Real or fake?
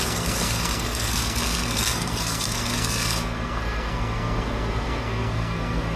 fake